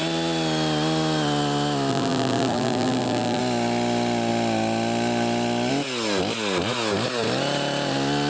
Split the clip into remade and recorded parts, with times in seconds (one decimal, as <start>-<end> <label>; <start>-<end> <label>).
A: 0.0-1.9 recorded; 1.9-3.4 remade; 3.4-8.3 recorded